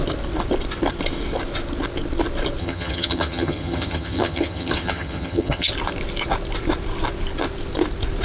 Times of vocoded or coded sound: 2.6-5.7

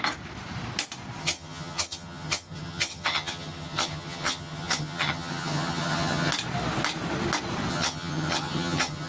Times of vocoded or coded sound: 1.2-6.3; 7.7-9.1

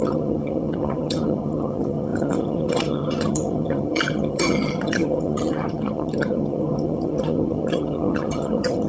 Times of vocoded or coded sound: 0.0-8.9

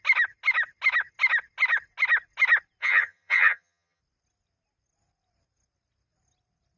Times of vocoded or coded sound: 2.8-4.0

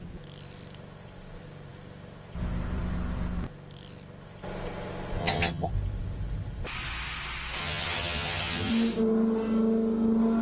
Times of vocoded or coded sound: 5.2-5.7; 7.6-8.7

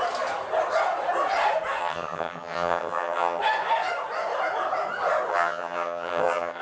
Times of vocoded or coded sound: 1.8-3.4; 5.3-6.6